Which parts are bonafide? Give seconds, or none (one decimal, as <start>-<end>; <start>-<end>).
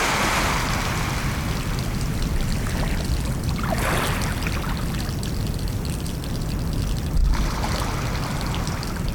0.0-9.1